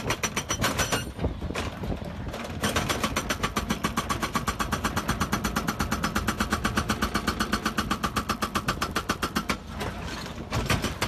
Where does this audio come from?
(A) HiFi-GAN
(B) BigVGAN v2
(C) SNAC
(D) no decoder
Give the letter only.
D